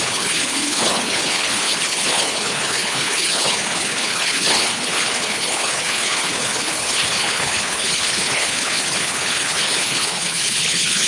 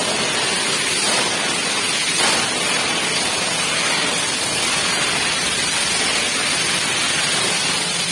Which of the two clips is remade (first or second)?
first